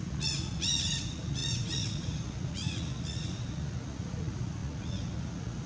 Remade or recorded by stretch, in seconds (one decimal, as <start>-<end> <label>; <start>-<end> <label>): 0.0-5.7 remade